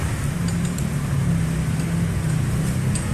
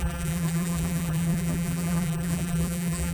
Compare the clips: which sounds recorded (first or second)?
first